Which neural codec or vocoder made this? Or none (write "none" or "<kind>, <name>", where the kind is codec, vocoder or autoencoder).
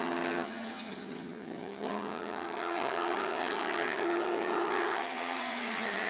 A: vocoder, HiFi-GAN